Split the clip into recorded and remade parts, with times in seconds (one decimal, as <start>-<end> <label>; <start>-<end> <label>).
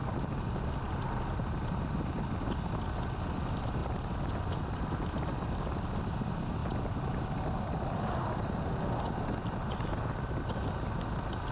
0.0-11.5 recorded